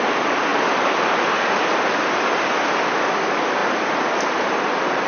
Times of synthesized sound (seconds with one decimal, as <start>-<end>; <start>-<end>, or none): none